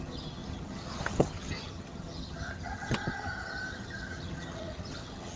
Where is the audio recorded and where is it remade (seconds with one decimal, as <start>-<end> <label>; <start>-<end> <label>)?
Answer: 0.0-5.4 remade